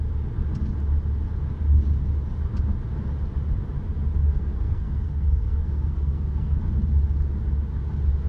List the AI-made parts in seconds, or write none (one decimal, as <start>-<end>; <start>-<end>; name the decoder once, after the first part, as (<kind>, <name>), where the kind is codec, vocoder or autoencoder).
4.2-6.6 (codec, SNAC)